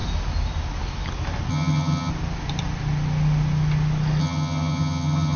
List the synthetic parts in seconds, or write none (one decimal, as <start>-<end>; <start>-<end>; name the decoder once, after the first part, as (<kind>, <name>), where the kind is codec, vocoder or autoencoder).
1.5-2.1 (vocoder, HiFi-GAN); 4.2-5.4